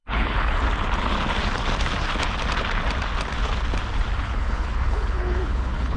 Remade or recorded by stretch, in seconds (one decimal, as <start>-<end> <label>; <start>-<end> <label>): 0.0-0.6 remade; 0.6-4.2 recorded; 4.2-6.0 remade